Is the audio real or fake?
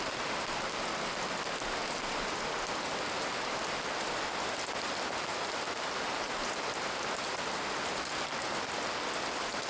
real